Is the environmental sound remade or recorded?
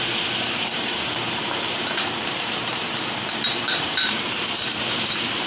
remade